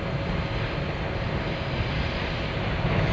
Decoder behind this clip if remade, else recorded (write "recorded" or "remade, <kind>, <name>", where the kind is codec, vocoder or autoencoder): recorded